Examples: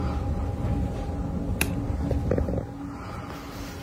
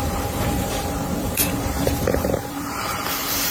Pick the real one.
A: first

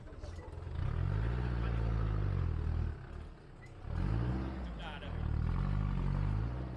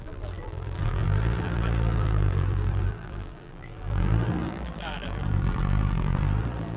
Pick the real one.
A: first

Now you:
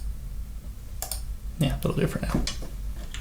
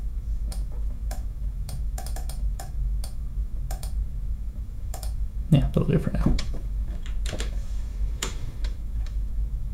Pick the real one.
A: first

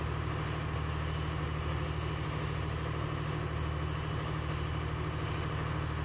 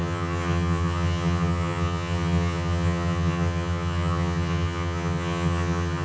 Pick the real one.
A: first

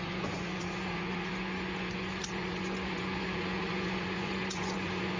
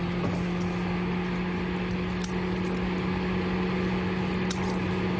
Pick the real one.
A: second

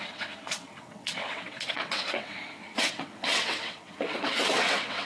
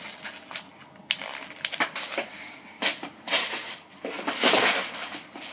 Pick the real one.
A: second